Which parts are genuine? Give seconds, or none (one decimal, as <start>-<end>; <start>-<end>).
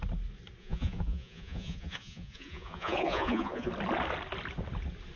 0.0-0.6; 3.7-5.2